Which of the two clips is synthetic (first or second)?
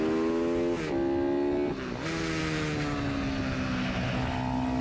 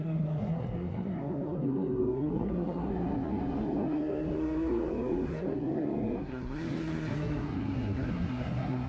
second